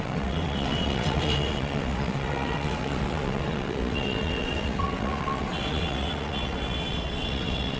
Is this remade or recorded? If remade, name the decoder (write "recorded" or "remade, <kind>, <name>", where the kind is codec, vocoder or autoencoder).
remade, vocoder, WaveNeXt